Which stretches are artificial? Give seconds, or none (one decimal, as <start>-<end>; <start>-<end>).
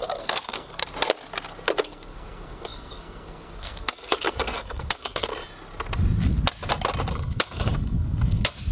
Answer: 0.0-0.8; 1.8-5.3; 7.1-8.7